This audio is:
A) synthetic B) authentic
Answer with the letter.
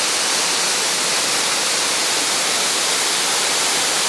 B